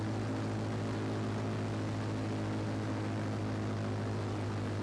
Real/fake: real